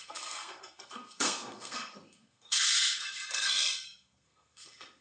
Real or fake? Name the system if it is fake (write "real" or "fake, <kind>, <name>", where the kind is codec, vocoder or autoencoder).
fake, codec, SNAC